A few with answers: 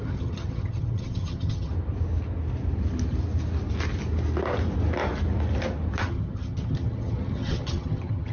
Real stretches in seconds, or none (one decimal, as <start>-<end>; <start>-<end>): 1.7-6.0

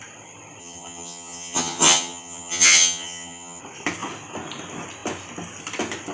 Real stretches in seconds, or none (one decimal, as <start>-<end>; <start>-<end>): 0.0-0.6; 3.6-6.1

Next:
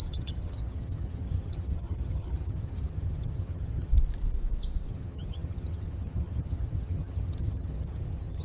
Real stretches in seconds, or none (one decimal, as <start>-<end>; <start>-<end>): 3.9-4.9